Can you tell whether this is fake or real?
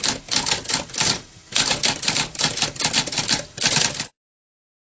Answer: real